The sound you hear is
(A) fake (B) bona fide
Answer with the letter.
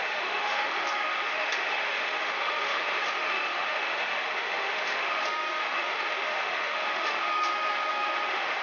A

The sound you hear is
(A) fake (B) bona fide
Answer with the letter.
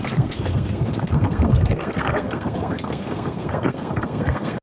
A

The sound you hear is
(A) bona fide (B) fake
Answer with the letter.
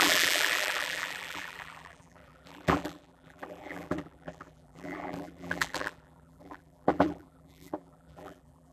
B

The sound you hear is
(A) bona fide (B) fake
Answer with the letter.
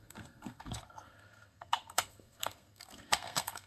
B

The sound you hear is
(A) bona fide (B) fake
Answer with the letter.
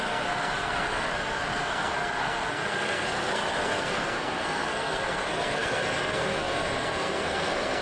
B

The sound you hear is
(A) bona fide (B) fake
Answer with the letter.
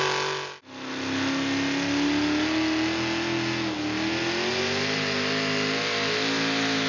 A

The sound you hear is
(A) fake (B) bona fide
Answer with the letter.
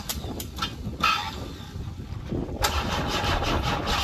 B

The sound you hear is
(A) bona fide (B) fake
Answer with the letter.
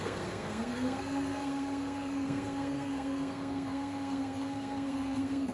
B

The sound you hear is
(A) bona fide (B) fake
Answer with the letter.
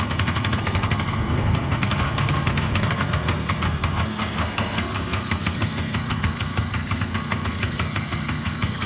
B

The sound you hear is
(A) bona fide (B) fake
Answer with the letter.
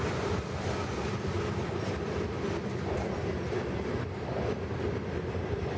A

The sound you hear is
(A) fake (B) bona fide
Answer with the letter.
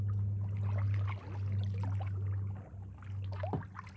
B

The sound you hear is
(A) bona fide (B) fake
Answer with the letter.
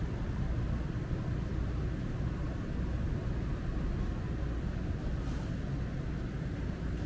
A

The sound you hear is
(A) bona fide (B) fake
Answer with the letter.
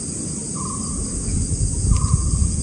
A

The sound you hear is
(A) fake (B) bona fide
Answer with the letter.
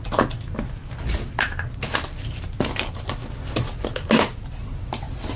B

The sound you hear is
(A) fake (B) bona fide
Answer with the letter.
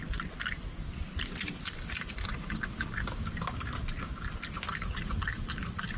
B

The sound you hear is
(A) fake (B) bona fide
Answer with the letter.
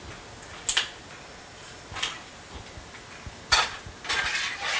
B